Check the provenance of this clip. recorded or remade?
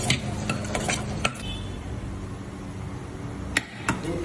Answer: recorded